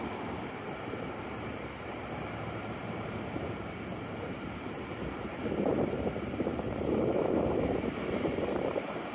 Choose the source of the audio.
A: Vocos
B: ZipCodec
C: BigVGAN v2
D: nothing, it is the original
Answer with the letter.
C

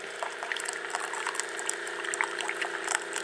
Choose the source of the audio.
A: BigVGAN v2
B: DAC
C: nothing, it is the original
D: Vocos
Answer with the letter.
A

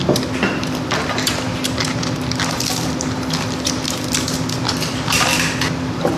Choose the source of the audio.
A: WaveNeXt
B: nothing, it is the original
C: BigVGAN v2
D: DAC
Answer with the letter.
C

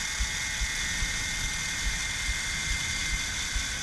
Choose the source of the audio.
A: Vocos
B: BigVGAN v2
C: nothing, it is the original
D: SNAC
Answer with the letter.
C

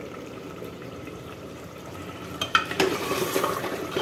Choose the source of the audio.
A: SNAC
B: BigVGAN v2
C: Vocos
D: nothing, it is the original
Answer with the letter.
B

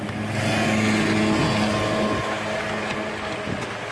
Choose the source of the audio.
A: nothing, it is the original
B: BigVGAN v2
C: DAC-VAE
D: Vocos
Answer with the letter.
A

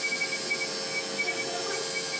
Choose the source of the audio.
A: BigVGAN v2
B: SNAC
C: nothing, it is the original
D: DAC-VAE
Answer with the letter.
C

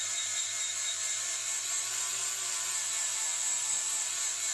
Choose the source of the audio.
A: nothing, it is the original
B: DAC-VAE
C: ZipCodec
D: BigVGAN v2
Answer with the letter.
D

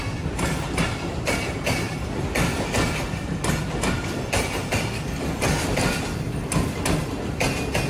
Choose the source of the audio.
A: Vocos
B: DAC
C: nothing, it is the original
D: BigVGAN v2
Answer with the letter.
C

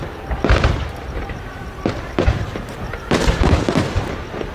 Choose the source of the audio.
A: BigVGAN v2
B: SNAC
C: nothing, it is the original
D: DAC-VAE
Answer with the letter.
C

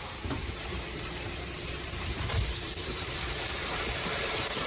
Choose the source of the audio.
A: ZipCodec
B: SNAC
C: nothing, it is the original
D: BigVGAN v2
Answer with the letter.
D